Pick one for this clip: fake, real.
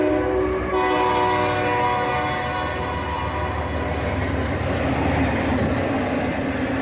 real